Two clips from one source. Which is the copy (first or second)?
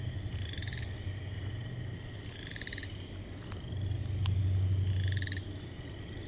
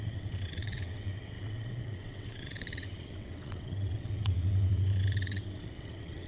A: second